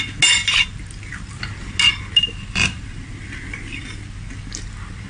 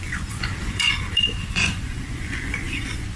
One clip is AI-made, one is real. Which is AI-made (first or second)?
second